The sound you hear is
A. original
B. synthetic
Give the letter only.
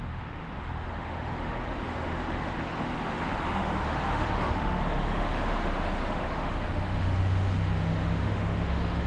B